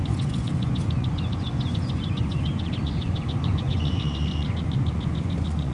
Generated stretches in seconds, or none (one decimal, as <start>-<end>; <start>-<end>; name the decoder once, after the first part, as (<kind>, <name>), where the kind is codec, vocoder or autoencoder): 0.0-5.7 (vocoder, Vocos)